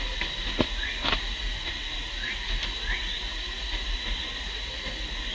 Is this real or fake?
real